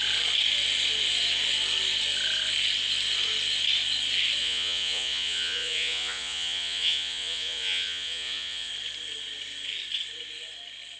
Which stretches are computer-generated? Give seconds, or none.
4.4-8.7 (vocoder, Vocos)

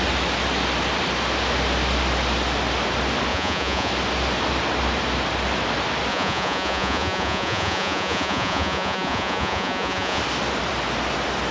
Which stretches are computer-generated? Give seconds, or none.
3.3-3.9 (vocoder, Vocos); 6.1-10.2

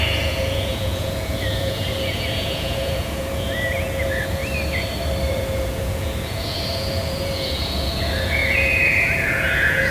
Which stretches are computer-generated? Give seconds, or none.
0.0-4.4 (vocoder, Vocos); 5.3-9.9